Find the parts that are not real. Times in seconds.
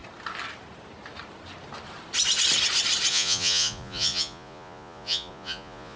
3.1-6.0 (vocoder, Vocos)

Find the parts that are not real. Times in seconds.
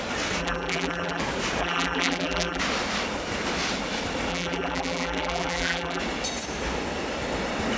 0.4-1.2 (vocoder, BigVGAN v2); 1.6-2.6; 4.3-6.0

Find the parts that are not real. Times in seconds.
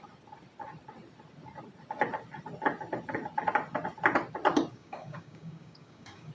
4.7-6.3 (codec, DAC)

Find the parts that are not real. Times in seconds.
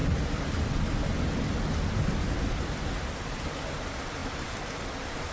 none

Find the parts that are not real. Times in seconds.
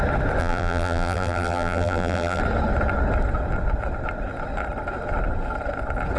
0.4-2.4 (vocoder, BigVGAN v2)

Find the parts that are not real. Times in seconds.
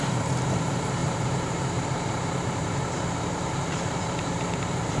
0.0-5.0 (vocoder, BigVGAN v2)